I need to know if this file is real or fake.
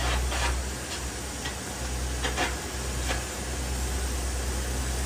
real